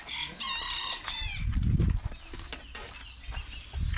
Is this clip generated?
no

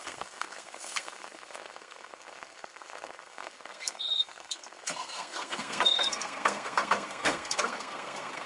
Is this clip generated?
yes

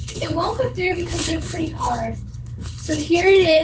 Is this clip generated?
yes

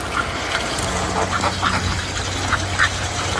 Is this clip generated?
no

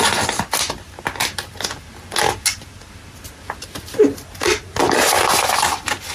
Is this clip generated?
no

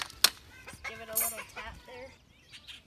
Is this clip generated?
no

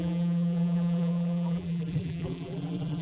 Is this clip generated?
yes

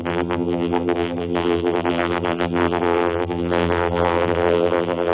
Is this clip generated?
yes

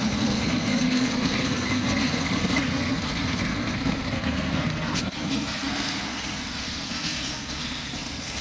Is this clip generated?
yes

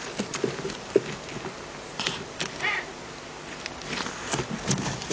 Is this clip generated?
no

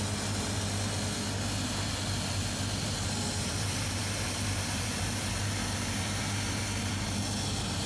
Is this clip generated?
no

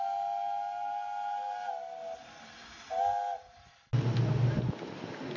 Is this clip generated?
no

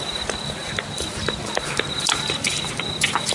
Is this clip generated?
no